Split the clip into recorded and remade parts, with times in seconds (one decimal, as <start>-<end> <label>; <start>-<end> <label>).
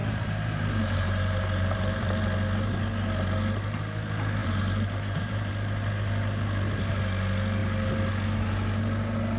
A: 0.0-2.2 remade; 2.2-4.4 recorded; 4.4-5.5 remade; 5.5-9.4 recorded